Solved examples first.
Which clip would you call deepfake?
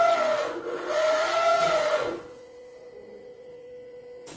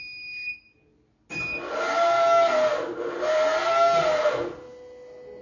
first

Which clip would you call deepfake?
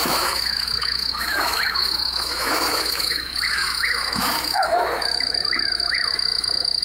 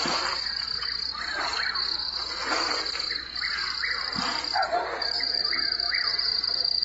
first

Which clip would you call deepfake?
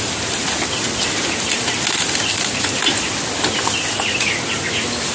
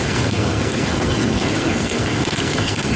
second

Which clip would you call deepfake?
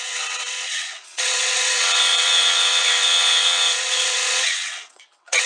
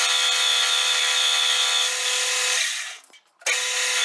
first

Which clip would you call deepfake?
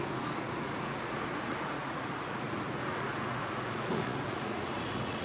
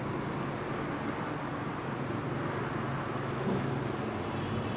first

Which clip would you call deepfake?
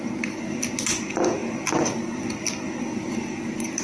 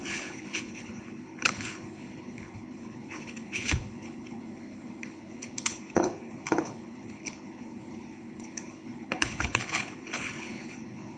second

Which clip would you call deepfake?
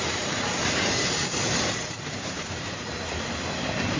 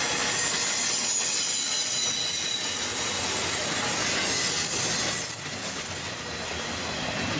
first